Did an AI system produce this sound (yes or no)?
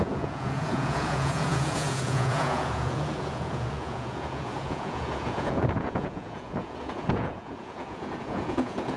yes